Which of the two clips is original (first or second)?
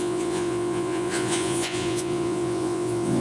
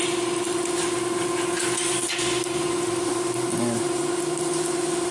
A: second